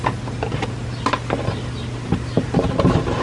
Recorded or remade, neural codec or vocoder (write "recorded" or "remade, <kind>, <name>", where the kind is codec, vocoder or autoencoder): recorded